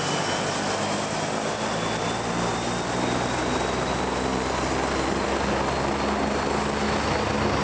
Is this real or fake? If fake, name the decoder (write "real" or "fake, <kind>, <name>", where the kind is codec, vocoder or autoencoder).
real